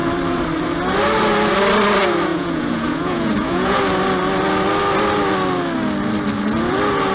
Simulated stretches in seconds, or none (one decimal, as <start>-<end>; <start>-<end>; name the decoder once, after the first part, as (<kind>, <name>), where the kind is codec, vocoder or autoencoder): 2.3-3.8 (vocoder, Vocos)